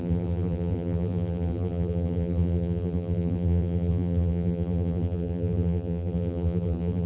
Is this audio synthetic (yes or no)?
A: yes